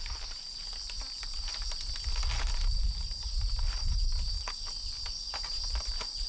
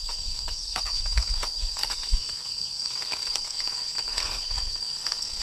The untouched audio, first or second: first